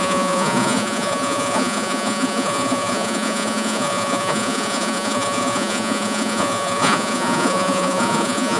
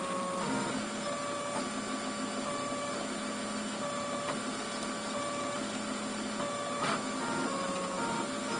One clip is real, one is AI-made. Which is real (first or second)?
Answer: second